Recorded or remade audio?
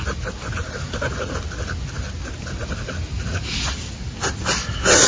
recorded